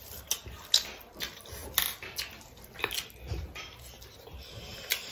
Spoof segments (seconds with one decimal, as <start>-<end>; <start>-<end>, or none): none